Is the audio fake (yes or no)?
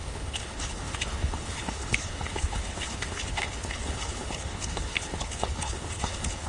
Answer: yes